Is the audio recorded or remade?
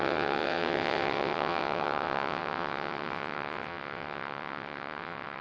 remade